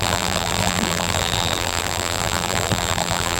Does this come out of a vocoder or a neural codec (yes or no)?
yes